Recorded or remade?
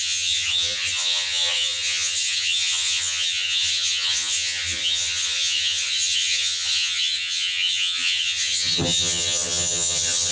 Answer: remade